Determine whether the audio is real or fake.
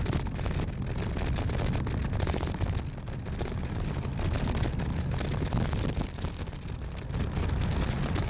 real